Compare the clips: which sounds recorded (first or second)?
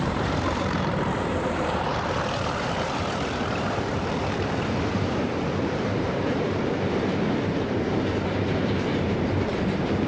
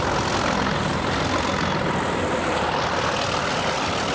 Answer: second